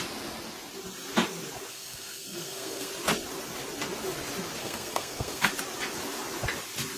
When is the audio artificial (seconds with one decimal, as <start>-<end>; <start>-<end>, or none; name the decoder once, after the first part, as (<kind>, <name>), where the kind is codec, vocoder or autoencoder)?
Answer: 1.7-2.9 (codec, SNAC); 4.6-5.5